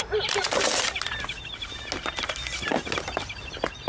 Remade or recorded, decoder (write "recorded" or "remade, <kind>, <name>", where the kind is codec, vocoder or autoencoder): recorded